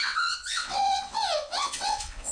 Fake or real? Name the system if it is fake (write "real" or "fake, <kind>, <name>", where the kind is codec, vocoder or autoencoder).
fake, vocoder, WaveNeXt